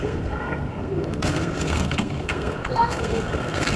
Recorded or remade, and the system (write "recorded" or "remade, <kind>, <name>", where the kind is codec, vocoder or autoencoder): remade, codec, SNAC